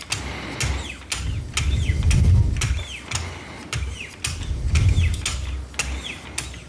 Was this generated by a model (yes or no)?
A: no